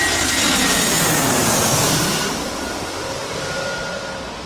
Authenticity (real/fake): real